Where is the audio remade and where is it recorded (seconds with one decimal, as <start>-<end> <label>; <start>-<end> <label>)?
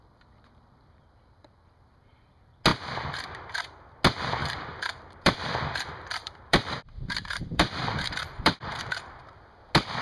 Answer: 0.0-4.4 recorded; 4.4-8.8 remade; 8.8-10.0 recorded